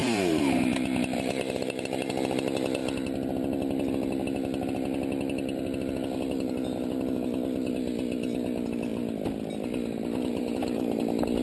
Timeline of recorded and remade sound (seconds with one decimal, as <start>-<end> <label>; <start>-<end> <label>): 0.0-2.1 remade; 2.1-10.3 recorded; 10.3-11.0 remade; 11.0-11.4 recorded